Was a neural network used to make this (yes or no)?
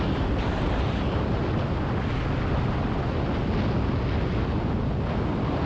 no